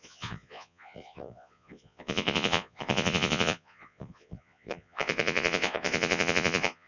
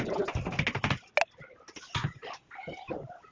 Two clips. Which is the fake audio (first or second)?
first